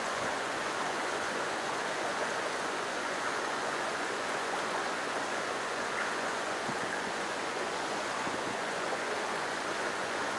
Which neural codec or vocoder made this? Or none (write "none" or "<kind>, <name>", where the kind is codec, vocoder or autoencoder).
vocoder, Vocos